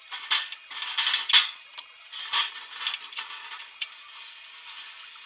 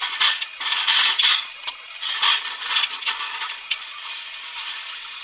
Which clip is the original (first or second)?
first